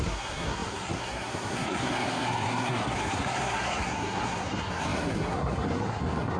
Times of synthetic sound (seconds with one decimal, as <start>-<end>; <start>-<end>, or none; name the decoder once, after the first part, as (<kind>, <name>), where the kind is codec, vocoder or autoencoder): 0.0-6.4 (codec, SNAC)